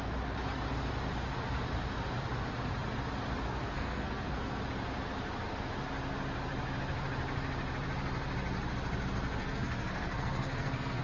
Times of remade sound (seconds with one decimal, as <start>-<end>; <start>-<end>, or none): 3.5-4.6; 9.4-11.0